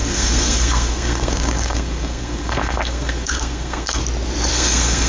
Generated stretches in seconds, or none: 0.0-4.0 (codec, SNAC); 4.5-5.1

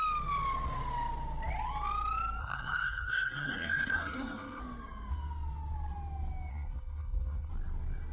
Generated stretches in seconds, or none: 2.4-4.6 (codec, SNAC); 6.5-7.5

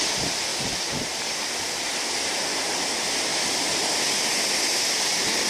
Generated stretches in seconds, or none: none